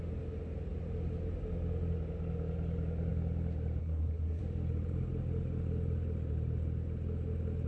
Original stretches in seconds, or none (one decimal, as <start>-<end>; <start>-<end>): 0.0-3.8; 4.4-7.7